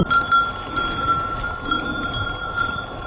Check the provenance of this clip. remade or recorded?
recorded